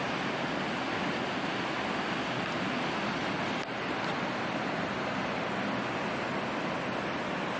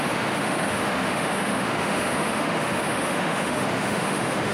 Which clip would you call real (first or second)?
first